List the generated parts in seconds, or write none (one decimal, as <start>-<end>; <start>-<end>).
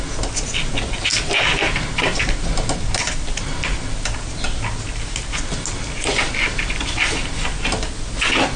6.5-7.0